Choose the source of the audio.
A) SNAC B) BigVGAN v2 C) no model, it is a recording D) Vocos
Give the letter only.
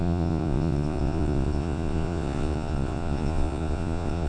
D